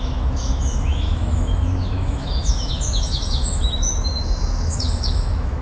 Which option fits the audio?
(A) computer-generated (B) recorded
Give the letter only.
A